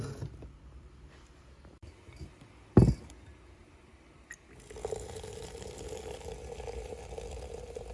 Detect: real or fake real